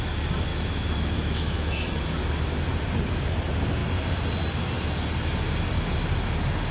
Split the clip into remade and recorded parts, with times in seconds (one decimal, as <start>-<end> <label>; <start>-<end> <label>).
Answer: 0.0-0.5 recorded; 0.5-2.0 remade; 2.0-6.7 recorded